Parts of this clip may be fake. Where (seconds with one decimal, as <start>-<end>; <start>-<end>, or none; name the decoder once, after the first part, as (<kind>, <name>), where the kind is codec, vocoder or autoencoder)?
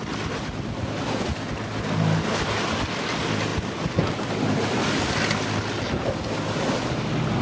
none